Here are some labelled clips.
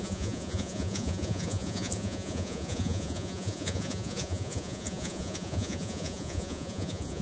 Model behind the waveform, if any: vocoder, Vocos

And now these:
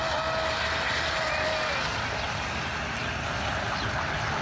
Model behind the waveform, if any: none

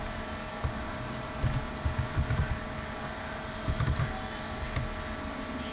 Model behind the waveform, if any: none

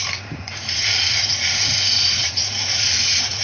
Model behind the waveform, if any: vocoder, Vocos